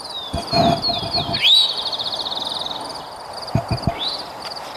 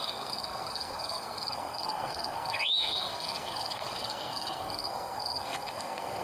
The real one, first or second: first